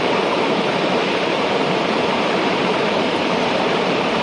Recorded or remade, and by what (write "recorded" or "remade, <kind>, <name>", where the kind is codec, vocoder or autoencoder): remade, vocoder, BigVGAN v2